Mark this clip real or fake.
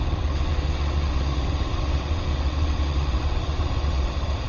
fake